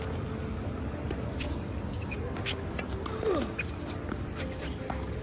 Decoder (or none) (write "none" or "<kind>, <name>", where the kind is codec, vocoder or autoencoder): none